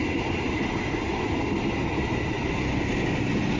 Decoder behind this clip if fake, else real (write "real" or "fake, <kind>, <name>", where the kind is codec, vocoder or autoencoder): real